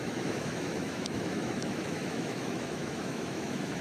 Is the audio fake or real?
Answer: fake